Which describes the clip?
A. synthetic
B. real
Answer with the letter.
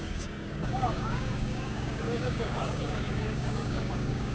A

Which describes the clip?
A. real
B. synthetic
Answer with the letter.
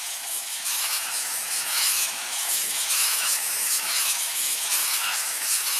B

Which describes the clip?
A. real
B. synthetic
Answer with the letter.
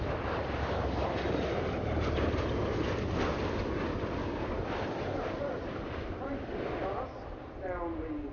A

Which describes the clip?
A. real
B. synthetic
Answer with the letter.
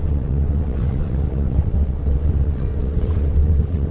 B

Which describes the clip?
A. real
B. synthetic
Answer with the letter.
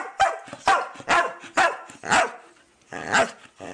A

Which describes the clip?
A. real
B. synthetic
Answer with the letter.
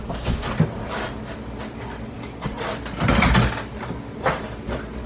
A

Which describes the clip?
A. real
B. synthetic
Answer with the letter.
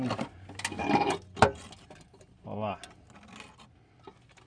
A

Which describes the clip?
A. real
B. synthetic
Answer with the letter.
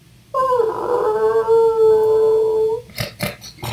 A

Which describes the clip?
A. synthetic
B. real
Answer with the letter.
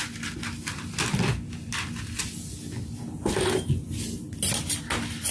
B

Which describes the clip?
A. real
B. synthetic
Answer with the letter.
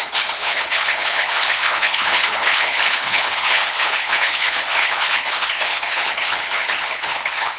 B